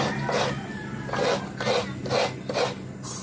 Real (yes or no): yes